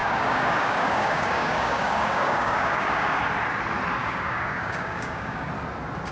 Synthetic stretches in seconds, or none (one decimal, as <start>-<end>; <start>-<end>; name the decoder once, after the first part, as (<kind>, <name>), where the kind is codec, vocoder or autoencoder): 0.0-3.2 (codec, DAC); 4.0-5.5